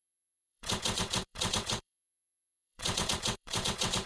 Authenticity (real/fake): fake